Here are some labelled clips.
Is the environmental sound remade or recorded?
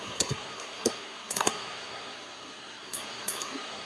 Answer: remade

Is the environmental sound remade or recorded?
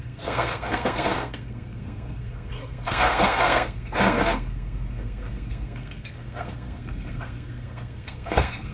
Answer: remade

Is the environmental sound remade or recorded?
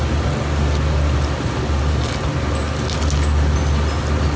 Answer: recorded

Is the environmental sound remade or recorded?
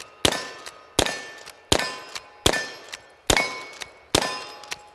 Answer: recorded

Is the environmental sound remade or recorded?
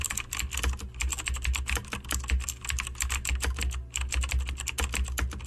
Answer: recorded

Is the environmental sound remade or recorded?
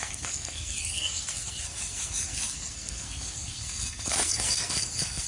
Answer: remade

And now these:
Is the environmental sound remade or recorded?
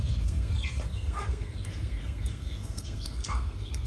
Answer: remade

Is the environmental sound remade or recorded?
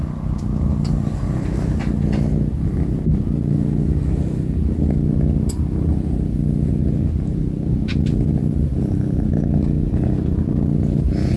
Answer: recorded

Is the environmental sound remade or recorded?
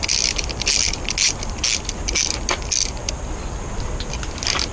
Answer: recorded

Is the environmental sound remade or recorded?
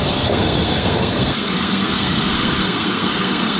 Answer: remade